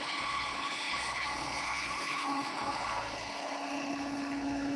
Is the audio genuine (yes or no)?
no